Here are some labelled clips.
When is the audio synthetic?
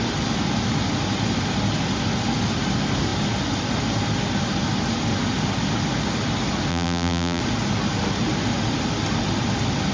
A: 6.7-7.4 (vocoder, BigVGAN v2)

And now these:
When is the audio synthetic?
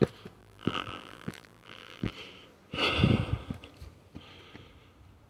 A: 0.4-2.1 (vocoder, BigVGAN v2)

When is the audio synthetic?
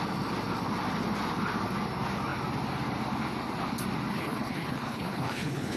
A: 4.1-5.8 (codec, HILCodec)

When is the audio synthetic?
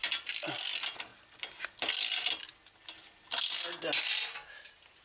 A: none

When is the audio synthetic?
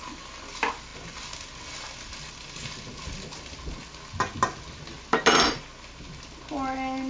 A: none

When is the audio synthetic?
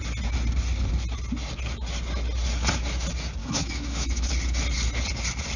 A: 3.4-4.3 (autoencoder, DAC-VAE)